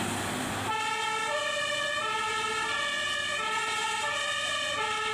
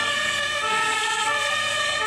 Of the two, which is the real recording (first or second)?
first